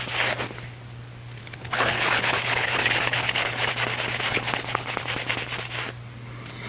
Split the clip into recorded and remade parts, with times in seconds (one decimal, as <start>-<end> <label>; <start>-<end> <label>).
0.0-1.4 recorded; 1.4-3.7 remade; 3.7-4.3 recorded; 4.3-5.0 remade; 5.0-6.7 recorded